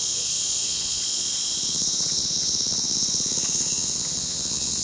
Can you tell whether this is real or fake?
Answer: fake